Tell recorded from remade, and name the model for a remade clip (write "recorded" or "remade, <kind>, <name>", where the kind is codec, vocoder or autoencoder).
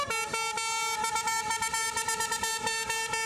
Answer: recorded